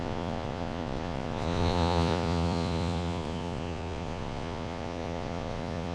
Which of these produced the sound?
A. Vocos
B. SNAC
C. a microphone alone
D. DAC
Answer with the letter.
A